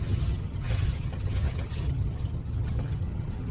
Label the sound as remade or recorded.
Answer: remade